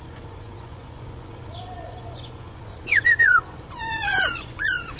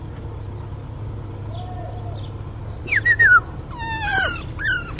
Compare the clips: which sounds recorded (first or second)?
second